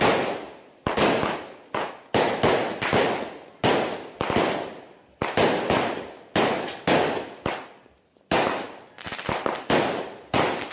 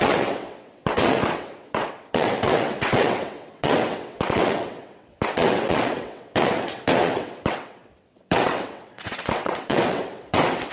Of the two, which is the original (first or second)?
first